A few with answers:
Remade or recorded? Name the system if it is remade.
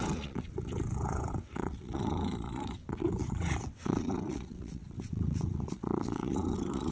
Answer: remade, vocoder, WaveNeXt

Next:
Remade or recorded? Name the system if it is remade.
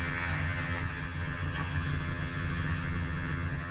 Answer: remade, vocoder, HiFi-GAN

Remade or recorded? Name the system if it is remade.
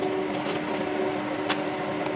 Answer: recorded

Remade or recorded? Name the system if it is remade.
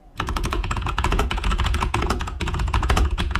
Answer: remade, vocoder, Vocos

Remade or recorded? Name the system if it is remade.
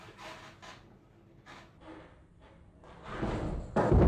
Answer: recorded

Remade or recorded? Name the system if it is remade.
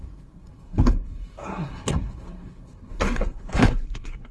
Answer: remade, codec, SNAC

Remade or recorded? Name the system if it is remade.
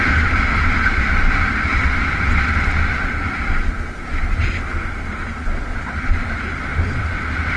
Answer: recorded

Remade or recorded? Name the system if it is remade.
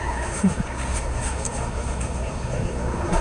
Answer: remade, codec, SNAC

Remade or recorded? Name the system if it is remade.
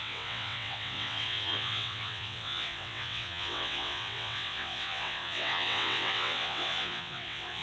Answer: remade, vocoder, WaveNeXt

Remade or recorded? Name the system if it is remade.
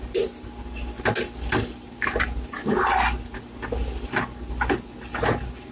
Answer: recorded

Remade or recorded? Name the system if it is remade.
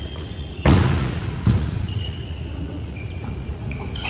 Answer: remade, vocoder, Vocos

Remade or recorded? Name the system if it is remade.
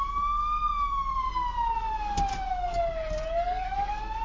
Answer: recorded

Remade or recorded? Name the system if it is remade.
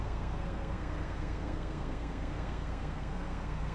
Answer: remade, codec, SNAC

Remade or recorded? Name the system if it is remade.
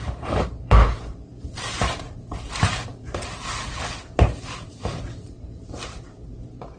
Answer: remade, vocoder, BigVGAN v2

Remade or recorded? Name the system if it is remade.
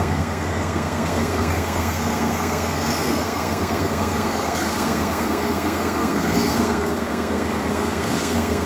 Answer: remade, codec, SNAC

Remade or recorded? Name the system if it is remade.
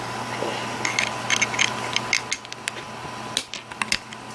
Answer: recorded